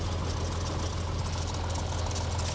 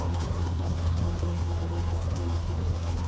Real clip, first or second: first